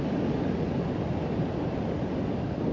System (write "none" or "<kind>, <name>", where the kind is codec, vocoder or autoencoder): none